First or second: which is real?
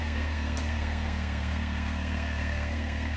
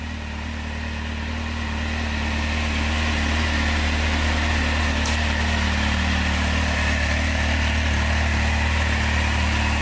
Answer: second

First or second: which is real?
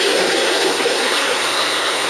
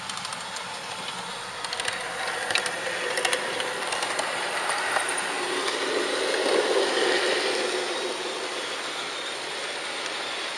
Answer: second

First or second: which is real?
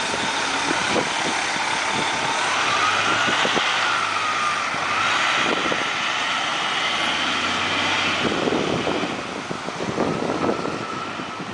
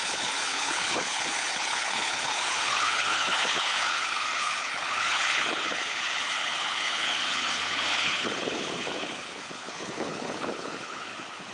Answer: first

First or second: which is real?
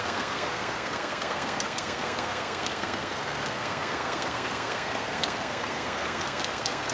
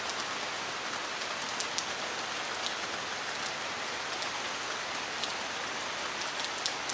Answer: second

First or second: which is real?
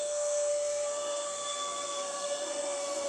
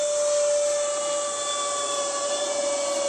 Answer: second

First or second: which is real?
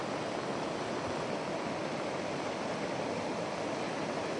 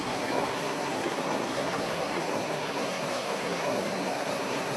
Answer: first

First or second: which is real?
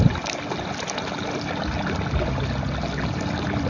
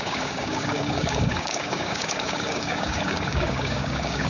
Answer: first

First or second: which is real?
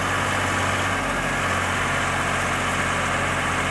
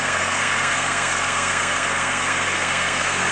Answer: first